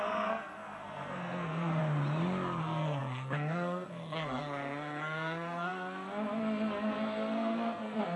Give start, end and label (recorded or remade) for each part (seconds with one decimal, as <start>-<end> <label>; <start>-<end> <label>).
0.0-1.8 remade; 1.8-2.6 recorded; 2.6-8.2 remade